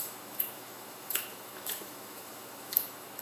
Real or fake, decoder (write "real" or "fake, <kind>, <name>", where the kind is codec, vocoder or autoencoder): fake, autoencoder, DAC-VAE